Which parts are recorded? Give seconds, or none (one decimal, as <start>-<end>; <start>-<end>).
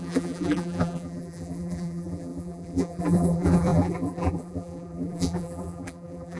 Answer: none